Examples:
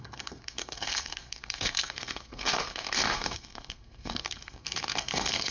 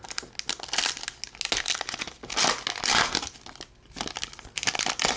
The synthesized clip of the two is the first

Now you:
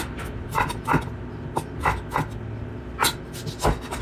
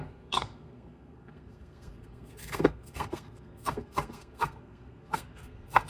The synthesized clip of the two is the second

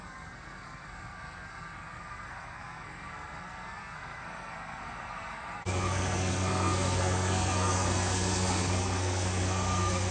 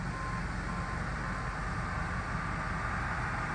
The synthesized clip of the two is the first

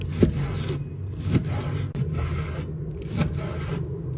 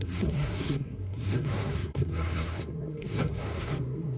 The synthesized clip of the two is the second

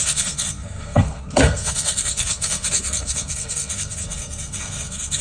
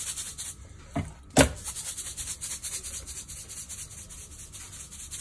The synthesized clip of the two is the first